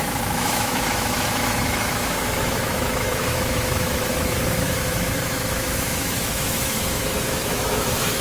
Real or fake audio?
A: fake